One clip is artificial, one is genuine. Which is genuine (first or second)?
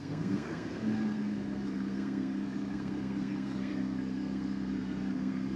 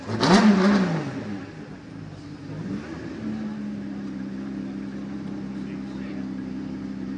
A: second